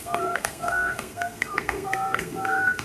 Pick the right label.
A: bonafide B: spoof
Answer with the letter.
B